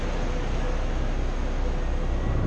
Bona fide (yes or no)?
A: yes